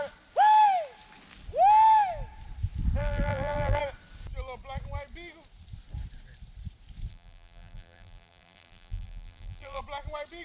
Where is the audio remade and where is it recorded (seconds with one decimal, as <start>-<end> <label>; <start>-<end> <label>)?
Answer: 0.0-3.0 recorded; 3.0-3.8 remade; 3.8-7.1 recorded; 7.1-9.8 remade; 9.8-10.4 recorded

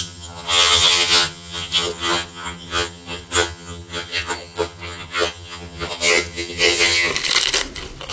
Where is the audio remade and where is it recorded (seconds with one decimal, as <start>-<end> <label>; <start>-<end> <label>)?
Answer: 0.0-7.1 remade; 7.1-8.1 recorded

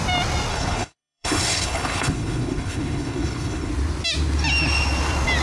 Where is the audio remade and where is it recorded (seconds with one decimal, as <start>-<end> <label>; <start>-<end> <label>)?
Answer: 0.0-0.5 recorded; 0.5-3.7 remade; 3.7-5.4 recorded

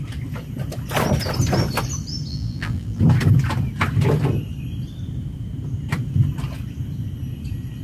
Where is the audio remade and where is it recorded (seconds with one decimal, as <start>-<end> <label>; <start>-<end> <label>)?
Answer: 0.0-2.3 recorded; 2.3-3.0 remade; 3.0-7.8 recorded

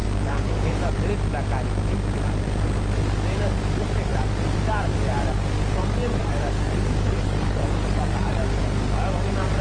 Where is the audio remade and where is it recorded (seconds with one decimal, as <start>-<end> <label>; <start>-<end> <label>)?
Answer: 0.0-0.9 remade; 0.9-6.2 recorded; 6.2-8.4 remade; 8.4-9.6 recorded

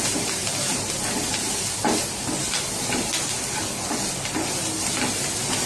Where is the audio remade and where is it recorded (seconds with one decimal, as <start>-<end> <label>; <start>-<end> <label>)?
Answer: 0.0-5.7 recorded

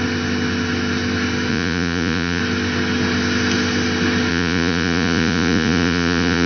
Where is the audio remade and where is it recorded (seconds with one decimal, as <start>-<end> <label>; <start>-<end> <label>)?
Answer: 0.0-1.5 recorded; 1.5-2.4 remade; 2.4-4.3 recorded; 4.3-6.5 remade